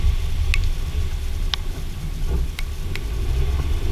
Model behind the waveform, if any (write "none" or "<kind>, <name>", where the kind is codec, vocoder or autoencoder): none